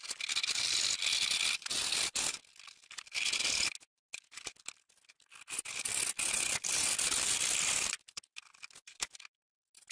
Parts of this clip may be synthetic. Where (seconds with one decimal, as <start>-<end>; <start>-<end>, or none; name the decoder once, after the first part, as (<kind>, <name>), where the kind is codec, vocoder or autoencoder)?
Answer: none